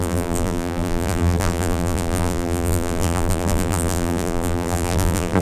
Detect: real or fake fake